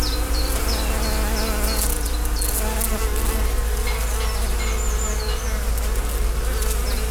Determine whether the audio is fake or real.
real